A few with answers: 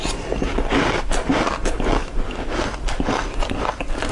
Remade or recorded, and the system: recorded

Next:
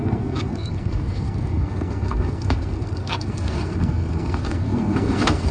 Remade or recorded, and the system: remade, codec, SNAC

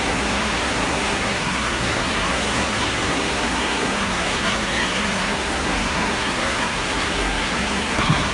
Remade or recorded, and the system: remade, codec, SNAC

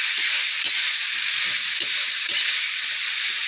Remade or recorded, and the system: recorded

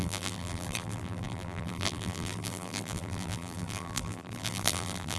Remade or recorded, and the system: remade, vocoder, BigVGAN v2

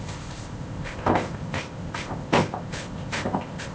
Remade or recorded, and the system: remade, codec, ZipCodec